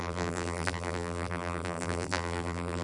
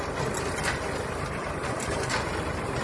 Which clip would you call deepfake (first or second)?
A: first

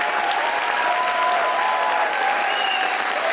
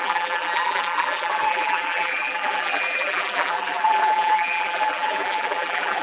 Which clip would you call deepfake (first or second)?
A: second